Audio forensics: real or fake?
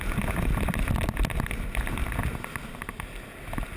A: real